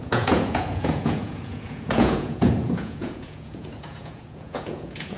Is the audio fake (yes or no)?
yes